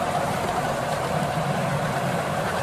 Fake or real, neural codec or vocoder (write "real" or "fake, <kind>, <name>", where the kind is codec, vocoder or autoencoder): real